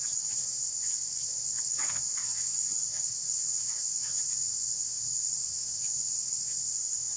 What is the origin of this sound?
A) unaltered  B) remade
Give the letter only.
B